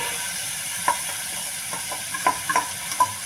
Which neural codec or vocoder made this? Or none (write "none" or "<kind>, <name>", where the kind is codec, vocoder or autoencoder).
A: vocoder, BigVGAN v2